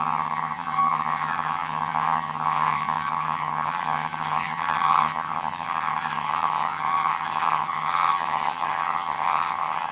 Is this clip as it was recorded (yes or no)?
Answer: no